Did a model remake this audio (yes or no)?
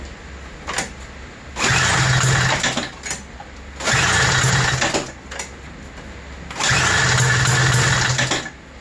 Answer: no